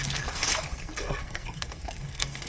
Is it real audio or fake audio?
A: fake